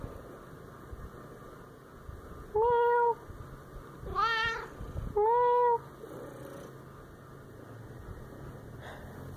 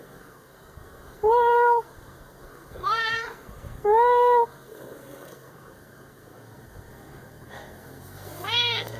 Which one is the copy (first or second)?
second